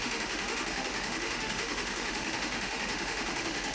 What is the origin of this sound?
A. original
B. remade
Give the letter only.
B